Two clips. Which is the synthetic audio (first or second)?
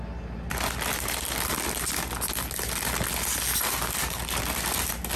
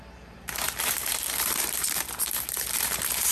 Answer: second